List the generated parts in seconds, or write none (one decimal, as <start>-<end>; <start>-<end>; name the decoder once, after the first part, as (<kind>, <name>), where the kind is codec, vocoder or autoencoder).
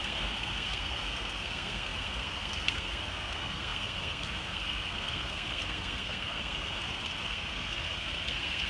0.0-8.7 (codec, SNAC)